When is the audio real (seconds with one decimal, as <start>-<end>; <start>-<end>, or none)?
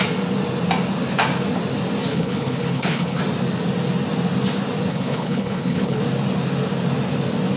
0.0-2.1; 3.2-4.9; 6.0-7.6